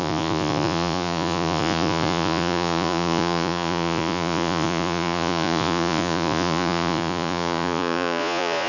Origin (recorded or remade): remade